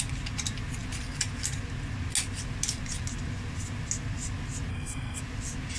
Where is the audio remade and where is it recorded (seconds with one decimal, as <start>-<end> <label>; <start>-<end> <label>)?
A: 0.0-4.7 recorded; 4.7-5.2 remade; 5.2-5.8 recorded